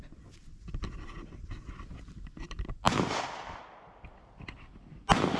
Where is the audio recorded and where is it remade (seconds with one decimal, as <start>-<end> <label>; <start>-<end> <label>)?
0.0-5.4 recorded